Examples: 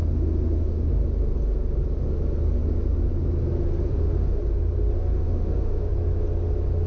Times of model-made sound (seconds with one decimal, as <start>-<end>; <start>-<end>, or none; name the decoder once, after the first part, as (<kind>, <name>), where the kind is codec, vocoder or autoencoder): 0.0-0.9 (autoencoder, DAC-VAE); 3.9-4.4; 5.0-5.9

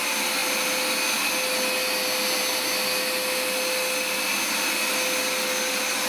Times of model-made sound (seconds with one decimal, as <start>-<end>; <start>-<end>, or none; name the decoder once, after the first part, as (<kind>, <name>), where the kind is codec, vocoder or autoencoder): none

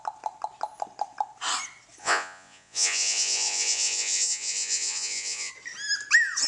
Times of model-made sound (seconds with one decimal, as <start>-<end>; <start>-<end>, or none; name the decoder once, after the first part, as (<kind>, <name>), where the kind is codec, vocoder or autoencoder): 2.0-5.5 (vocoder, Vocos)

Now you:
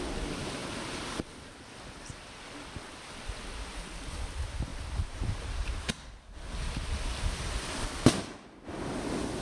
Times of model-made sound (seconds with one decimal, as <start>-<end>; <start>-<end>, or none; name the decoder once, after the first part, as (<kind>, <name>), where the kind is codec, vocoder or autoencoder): 4.7-5.9 (vocoder, BigVGAN v2)